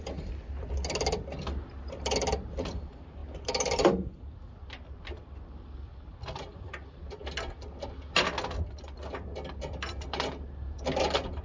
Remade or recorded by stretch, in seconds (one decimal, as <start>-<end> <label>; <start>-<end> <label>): 0.0-11.4 recorded